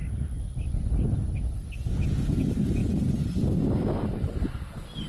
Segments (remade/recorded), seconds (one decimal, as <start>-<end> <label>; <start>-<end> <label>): 0.0-5.1 recorded